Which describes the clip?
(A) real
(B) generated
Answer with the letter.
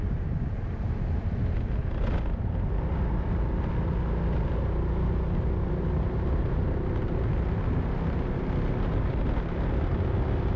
A